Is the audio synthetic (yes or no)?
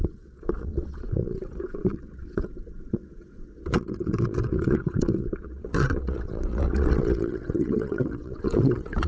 yes